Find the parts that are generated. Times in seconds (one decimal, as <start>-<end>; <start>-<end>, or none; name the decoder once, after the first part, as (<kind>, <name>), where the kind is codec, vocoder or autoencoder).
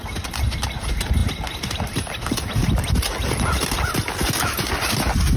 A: none